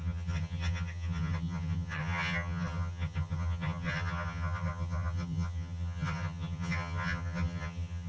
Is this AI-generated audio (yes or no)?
yes